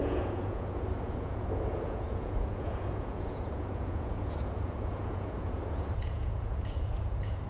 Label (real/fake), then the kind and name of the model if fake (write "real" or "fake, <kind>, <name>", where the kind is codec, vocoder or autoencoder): fake, vocoder, Vocos